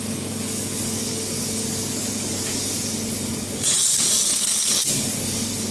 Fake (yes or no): yes